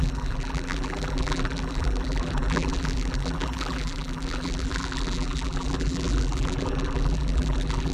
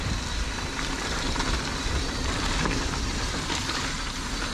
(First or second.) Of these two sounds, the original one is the second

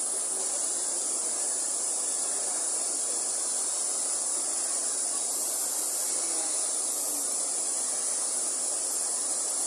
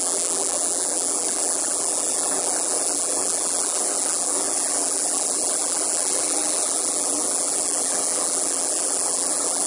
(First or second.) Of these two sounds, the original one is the first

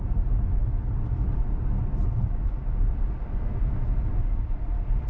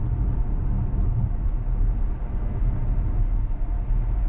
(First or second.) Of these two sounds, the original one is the second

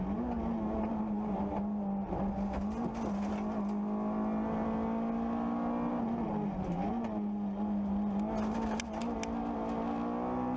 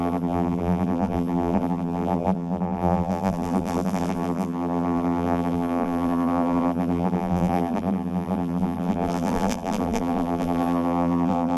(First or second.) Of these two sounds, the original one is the first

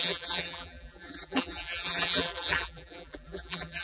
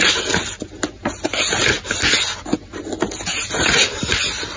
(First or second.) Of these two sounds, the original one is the second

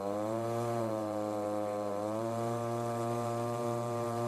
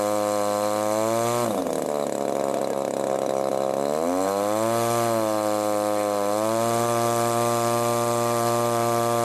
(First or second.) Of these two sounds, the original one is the second